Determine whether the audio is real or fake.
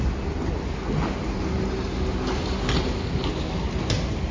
real